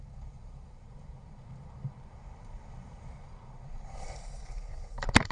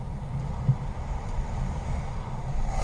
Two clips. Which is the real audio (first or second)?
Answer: second